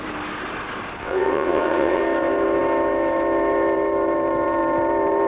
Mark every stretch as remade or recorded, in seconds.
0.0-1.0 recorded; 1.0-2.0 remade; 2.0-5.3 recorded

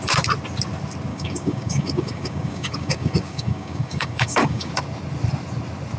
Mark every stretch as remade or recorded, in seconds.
0.0-1.1 recorded; 1.1-4.7 remade; 4.7-6.0 recorded

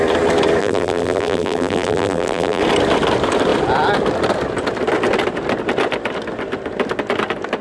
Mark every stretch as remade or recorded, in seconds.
0.0-0.6 recorded; 0.6-2.6 remade; 2.6-7.6 recorded

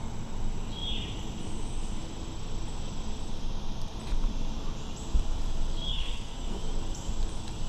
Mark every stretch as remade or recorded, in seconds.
0.0-5.9 recorded; 5.9-6.6 remade; 6.6-7.7 recorded